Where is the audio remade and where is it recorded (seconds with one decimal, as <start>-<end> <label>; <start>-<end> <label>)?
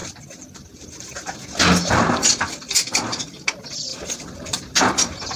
0.0-5.4 recorded